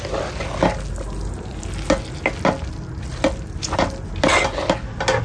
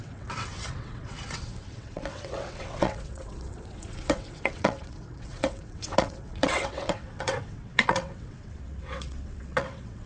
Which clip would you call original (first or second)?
first